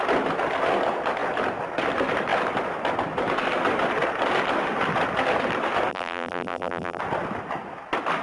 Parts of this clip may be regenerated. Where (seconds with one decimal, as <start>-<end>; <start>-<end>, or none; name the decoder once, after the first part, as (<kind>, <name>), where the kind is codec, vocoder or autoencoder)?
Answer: 5.9-7.0 (vocoder, BigVGAN v2)